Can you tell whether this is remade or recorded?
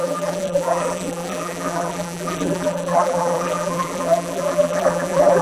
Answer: remade